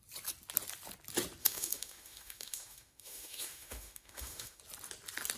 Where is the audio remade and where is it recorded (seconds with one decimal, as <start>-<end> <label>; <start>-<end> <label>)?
0.0-1.4 recorded; 1.4-4.6 remade; 4.6-5.4 recorded